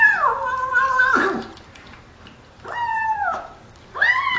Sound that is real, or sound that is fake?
fake